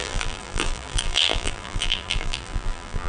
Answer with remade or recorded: remade